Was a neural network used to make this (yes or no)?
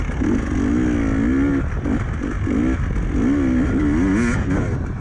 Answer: no